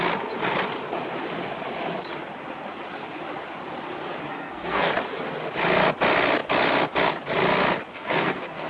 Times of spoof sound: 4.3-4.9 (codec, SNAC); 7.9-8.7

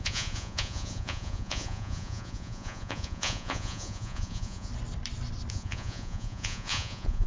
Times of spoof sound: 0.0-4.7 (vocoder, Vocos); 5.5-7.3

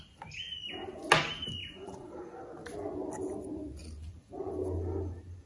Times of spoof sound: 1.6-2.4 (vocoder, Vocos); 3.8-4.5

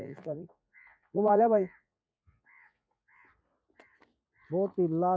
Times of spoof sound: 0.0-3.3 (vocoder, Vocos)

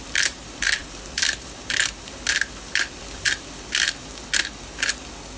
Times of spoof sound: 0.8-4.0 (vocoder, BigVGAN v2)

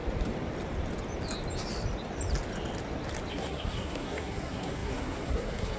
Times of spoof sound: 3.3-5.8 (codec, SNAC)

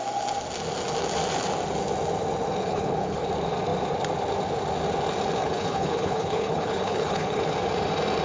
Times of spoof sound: 2.6-3.3 (codec, HILCodec); 5.4-7.4